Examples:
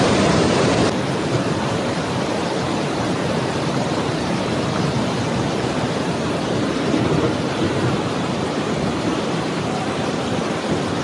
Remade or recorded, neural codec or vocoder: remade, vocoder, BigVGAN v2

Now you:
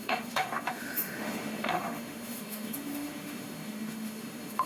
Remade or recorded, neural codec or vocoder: remade, autoencoder, DAC-VAE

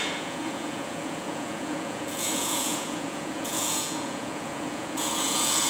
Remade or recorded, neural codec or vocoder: remade, vocoder, Vocos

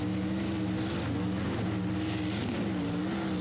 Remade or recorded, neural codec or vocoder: recorded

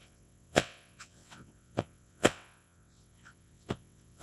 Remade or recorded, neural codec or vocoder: remade, vocoder, WaveNeXt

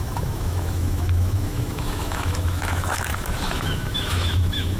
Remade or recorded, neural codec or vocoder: remade, autoencoder, DAC-VAE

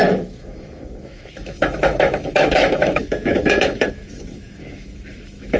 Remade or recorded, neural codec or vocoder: remade, autoencoder, DAC-VAE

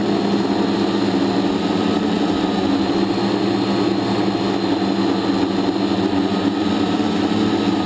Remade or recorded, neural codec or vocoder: recorded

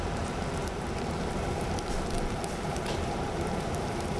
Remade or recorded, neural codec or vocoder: remade, vocoder, BigVGAN v2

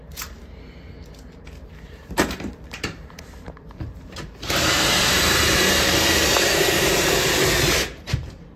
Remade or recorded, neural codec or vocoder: remade, vocoder, BigVGAN v2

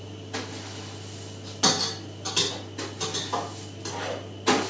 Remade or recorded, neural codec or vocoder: recorded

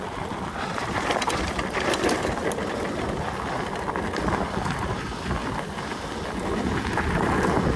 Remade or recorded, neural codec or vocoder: recorded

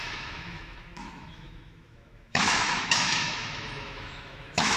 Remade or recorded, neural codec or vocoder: remade, autoencoder, DAC-VAE